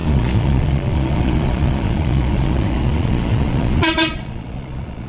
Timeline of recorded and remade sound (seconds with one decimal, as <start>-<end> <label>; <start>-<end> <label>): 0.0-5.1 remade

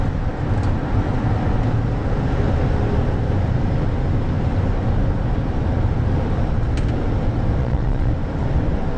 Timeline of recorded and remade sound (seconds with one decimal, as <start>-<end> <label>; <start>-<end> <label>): 0.0-7.6 recorded; 7.6-8.1 remade; 8.1-9.0 recorded

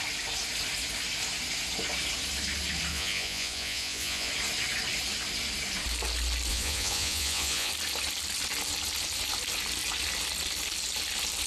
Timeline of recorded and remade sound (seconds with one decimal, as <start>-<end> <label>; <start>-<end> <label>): 0.0-2.9 recorded; 2.9-4.3 remade; 4.3-6.5 recorded; 6.5-7.7 remade; 7.7-11.5 recorded